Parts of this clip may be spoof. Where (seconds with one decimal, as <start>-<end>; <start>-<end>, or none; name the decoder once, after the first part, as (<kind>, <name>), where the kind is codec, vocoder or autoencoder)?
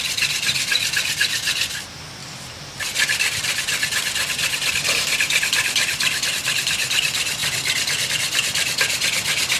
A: none